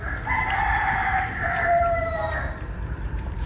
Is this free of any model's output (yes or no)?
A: no